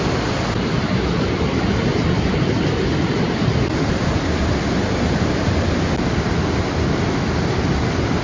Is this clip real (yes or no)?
yes